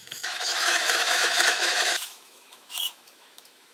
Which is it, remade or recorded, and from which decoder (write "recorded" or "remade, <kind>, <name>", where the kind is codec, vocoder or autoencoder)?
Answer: remade, autoencoder, DAC-VAE